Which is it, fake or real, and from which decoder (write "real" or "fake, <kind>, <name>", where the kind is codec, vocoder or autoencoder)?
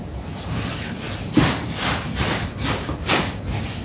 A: real